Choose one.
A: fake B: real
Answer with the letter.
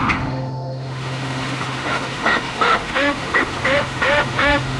A